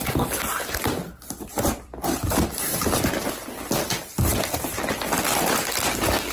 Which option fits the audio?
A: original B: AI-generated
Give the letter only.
A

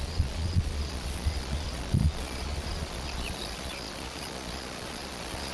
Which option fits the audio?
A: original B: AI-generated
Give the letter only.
B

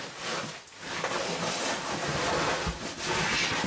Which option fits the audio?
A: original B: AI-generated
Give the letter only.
A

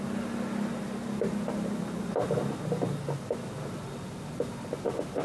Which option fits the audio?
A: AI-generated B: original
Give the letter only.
B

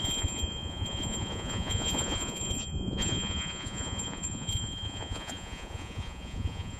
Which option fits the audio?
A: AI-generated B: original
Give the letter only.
A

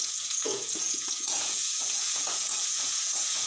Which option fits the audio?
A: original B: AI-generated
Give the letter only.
B